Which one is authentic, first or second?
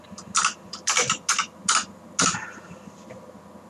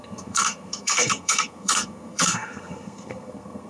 first